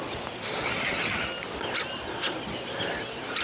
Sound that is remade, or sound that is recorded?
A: recorded